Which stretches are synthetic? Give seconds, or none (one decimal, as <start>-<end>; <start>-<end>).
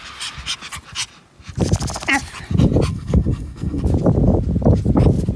2.9-3.8